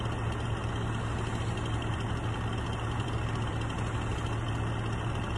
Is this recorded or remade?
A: recorded